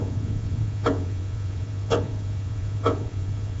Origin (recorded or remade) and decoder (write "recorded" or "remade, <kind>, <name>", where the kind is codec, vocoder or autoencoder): remade, vocoder, Vocos